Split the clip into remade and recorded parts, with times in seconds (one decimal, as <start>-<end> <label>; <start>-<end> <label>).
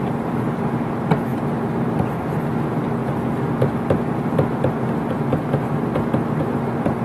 0.0-7.0 recorded